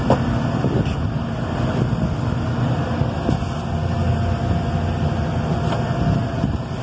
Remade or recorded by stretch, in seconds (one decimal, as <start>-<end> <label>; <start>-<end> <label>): 0.0-6.8 recorded